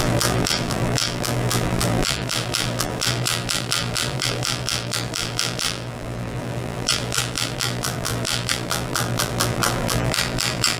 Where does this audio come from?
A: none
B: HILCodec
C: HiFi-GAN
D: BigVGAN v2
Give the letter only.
D